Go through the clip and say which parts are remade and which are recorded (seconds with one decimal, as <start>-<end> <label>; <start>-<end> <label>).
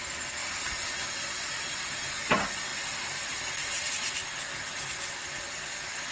0.0-2.7 recorded; 2.7-3.9 remade; 3.9-6.1 recorded